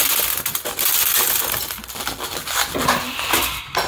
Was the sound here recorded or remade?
recorded